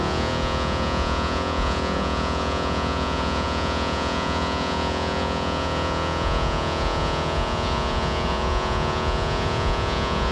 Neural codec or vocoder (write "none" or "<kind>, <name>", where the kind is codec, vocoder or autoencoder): vocoder, Vocos